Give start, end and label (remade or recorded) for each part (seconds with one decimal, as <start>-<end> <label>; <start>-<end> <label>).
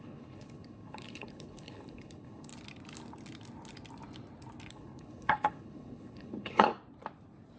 0.0-2.5 remade; 2.5-4.7 recorded; 4.7-6.7 remade; 6.7-7.6 recorded